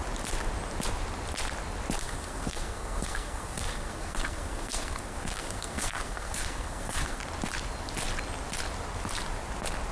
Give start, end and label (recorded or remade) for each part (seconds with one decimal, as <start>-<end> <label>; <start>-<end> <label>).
0.0-2.0 recorded; 2.0-7.2 remade; 7.2-9.9 recorded